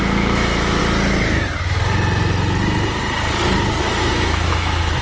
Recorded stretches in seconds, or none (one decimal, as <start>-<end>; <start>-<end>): 0.8-3.8